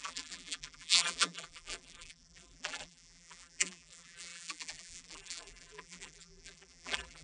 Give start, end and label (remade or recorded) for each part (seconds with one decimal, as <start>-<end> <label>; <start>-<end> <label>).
0.0-7.2 remade